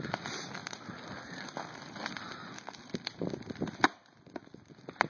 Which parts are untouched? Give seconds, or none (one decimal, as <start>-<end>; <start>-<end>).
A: 0.0-5.1